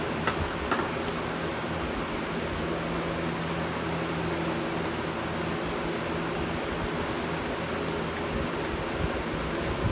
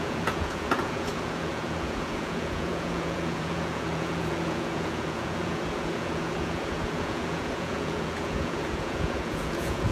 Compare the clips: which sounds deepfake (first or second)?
second